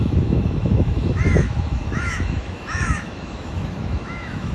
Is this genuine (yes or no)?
no